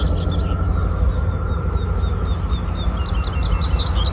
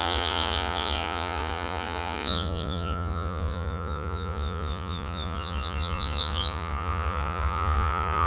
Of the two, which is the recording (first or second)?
first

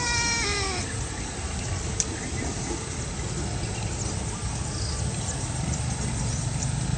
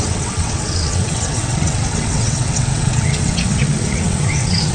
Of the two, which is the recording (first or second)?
first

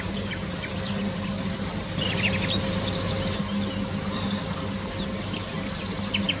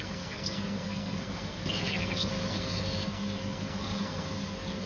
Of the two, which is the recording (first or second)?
first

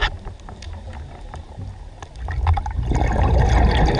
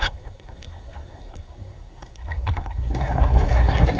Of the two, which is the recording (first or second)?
first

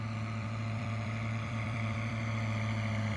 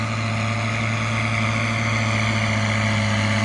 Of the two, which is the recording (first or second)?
second